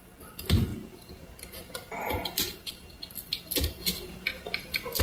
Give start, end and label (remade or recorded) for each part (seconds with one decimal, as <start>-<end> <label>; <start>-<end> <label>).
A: 0.0-5.0 recorded

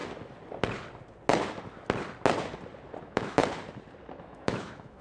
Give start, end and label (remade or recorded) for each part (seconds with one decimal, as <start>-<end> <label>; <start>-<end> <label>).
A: 0.0-3.0 recorded; 3.0-3.4 remade; 3.4-4.2 recorded; 4.2-5.0 remade

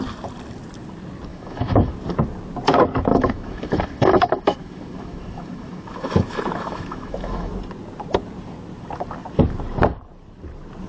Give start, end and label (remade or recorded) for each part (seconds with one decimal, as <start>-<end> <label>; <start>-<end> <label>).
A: 0.0-1.3 recorded; 1.3-1.9 remade; 1.9-3.1 recorded; 3.1-7.5 remade; 7.5-10.9 recorded

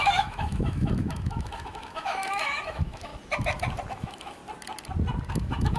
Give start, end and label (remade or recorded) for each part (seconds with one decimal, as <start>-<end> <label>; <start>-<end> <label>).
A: 0.0-3.1 remade; 3.1-3.9 recorded; 3.9-4.4 remade; 4.4-5.3 recorded; 5.3-5.8 remade

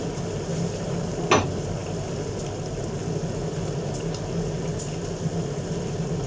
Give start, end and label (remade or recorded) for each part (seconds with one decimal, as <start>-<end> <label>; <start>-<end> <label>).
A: 0.0-6.3 recorded

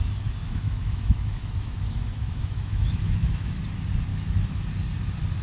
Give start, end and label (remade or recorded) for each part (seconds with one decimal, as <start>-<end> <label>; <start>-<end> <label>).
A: 0.0-0.4 recorded; 0.4-3.6 remade; 3.6-4.1 recorded; 4.1-4.6 remade; 4.6-5.4 recorded

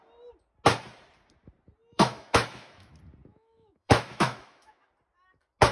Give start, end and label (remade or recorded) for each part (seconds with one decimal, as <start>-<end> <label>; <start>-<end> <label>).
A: 0.0-1.9 recorded; 1.9-2.9 remade; 2.9-3.3 recorded; 3.3-4.9 remade; 4.9-5.7 recorded

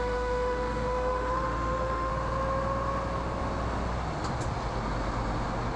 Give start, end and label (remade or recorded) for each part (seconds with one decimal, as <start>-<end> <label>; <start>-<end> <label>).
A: 0.0-2.1 remade; 2.1-5.8 recorded